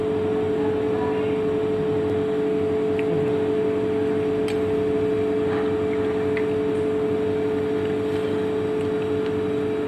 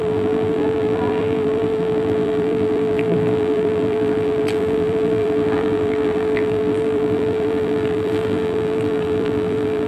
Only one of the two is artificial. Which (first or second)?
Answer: second